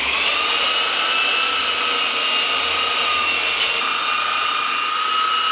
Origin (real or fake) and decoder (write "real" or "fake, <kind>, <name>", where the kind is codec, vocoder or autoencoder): real